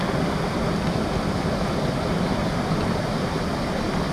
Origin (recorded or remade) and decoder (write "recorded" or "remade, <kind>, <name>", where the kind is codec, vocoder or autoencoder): recorded